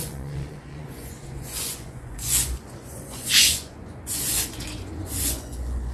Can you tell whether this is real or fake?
fake